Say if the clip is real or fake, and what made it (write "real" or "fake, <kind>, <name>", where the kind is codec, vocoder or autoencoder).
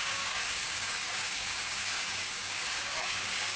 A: fake, codec, DAC